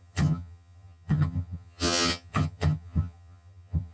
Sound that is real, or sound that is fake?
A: fake